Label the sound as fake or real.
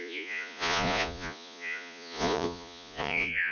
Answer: fake